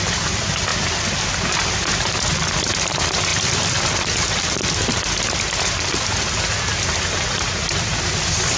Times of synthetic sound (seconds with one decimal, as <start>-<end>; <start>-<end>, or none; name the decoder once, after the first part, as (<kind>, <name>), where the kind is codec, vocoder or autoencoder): none